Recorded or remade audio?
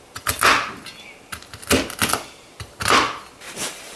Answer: recorded